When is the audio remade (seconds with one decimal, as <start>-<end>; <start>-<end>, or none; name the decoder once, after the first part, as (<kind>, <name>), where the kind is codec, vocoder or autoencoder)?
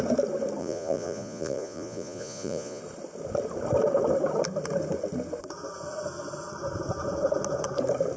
0.6-2.8 (vocoder, Vocos)